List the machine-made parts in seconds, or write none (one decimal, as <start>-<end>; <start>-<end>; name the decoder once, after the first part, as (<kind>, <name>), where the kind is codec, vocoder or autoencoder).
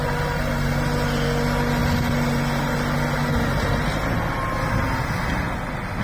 none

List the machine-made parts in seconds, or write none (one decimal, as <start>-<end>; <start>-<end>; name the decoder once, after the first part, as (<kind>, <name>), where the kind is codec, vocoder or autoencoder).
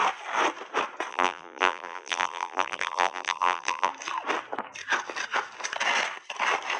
1.1-3.9 (vocoder, BigVGAN v2)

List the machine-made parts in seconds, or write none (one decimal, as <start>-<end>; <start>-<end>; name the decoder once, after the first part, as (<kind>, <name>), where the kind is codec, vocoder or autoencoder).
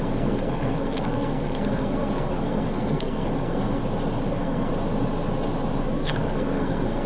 0.0-3.8 (codec, SNAC); 4.3-4.7; 5.8-7.1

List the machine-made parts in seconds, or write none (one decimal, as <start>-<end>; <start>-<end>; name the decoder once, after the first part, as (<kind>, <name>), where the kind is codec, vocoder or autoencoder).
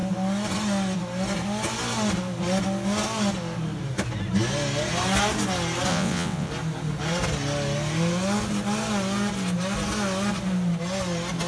5.9-6.5 (vocoder, WaveNeXt)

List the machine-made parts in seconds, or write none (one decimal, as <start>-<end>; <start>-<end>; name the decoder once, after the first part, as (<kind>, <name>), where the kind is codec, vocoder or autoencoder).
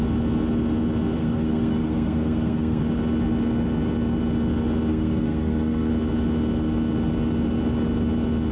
1.2-2.8 (codec, SNAC); 4.9-5.9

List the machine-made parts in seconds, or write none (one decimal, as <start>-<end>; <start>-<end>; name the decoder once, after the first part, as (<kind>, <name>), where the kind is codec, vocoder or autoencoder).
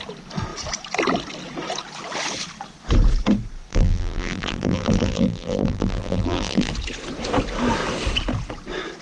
3.7-6.7 (vocoder, BigVGAN v2)